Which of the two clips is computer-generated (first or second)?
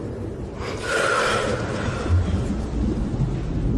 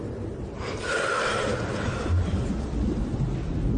second